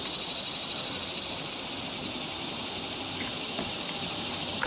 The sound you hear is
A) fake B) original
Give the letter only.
B